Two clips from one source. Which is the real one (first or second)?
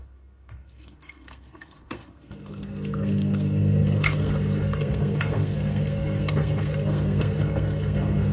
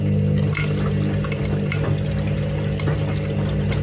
second